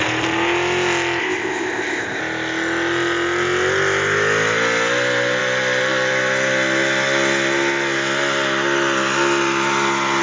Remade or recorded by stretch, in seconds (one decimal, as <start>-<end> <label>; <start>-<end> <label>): 0.0-1.2 recorded; 1.2-2.2 remade; 2.2-10.2 recorded